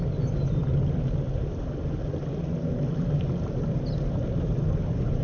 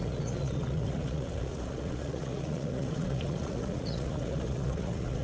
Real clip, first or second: first